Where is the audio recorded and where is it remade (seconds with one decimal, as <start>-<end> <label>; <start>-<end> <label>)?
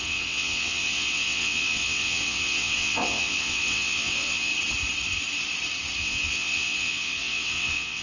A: 0.0-4.5 remade; 4.5-6.0 recorded; 6.0-8.0 remade